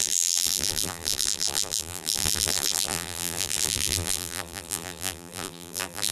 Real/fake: fake